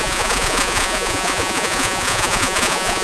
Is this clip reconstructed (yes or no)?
yes